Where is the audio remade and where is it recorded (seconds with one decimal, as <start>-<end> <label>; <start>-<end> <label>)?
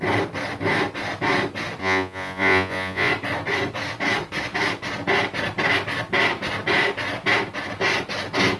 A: 0.0-1.8 recorded; 1.8-3.1 remade; 3.1-8.6 recorded